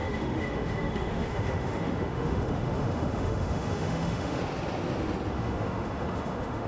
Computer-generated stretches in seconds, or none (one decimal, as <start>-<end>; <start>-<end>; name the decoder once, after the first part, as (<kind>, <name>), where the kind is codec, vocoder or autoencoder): 0.0-4.4 (autoencoder, DAC-VAE); 5.3-6.7